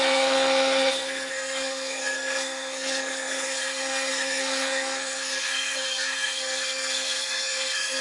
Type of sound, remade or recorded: remade